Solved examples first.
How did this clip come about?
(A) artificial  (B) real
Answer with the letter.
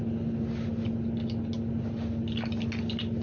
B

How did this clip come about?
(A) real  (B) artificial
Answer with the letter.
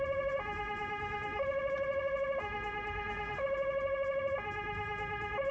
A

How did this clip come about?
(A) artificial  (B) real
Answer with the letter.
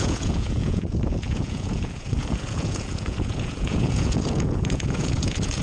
A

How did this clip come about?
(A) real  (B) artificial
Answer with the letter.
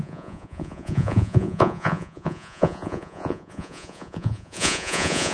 B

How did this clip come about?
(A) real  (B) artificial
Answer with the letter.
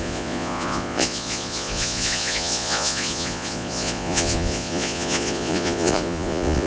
B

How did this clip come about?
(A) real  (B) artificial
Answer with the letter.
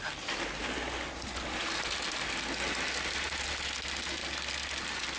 A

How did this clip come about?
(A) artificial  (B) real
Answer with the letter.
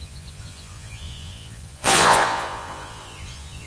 A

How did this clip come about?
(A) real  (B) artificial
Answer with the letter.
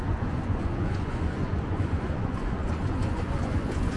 B